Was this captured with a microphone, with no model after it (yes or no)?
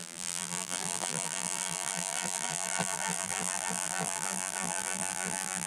no